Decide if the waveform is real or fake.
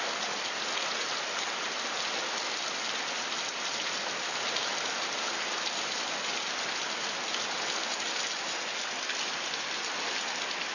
real